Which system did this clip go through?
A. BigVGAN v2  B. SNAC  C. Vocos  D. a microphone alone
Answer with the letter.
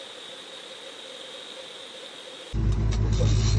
D